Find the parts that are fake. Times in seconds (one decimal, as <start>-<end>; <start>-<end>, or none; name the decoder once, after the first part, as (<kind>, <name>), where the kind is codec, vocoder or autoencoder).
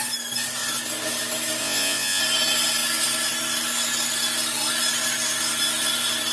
1.6-2.2 (vocoder, Vocos)